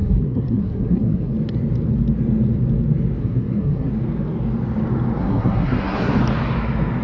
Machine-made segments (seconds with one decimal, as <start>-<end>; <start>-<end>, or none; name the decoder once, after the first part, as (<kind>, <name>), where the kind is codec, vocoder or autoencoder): 0.0-1.3 (codec, SNAC); 3.2-3.9; 5.2-6.2